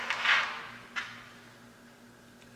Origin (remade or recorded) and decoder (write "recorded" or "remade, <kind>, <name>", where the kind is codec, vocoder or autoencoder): recorded